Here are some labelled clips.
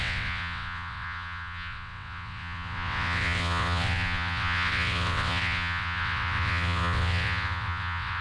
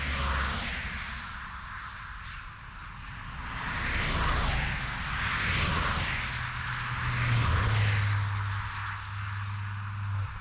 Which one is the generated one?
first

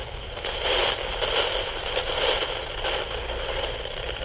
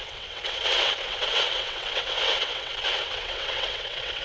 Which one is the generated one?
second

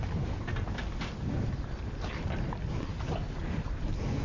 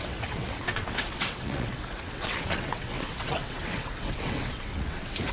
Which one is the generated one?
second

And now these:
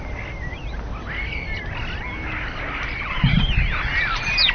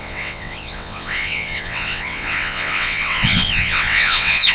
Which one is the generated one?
second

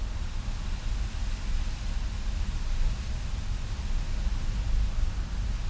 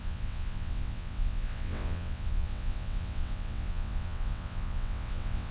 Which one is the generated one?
second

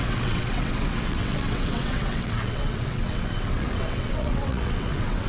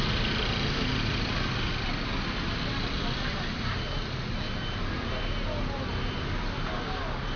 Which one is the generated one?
first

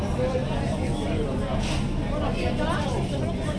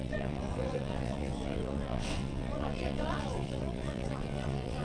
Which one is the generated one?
second